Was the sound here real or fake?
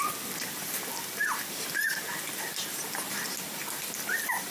fake